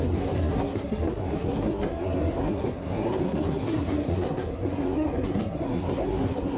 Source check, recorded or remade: remade